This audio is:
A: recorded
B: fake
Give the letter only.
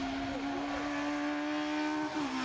A